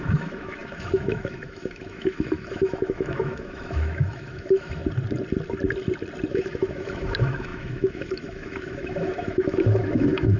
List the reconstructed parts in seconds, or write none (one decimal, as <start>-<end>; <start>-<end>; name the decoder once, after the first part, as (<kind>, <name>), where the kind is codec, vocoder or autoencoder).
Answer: 0.0-4.8 (autoencoder, DAC-VAE); 6.3-10.4